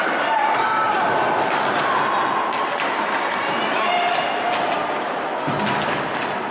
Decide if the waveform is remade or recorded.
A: recorded